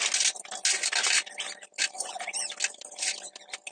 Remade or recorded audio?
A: recorded